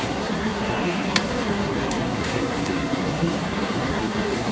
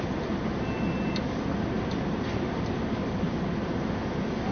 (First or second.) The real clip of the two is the second